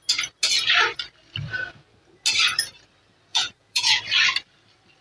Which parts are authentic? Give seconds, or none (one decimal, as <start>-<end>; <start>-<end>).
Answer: 0.0-3.3; 4.0-5.0